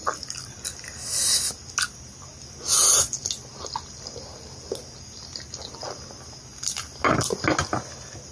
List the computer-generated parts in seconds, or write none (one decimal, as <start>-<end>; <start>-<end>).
none